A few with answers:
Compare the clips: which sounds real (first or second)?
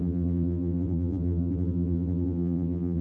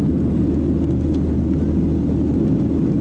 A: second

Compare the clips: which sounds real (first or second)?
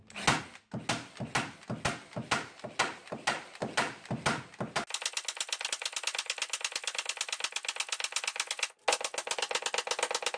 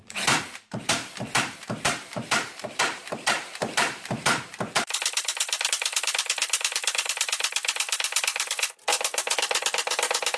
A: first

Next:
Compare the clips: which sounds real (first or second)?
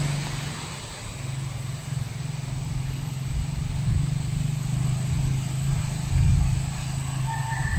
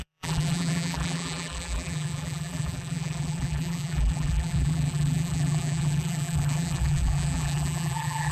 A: first